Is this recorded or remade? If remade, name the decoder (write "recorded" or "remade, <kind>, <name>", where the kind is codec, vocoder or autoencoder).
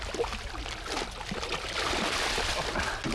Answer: recorded